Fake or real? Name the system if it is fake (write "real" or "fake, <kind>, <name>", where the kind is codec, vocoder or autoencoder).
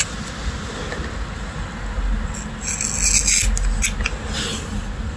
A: real